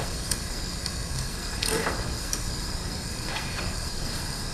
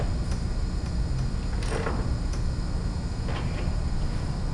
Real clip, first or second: second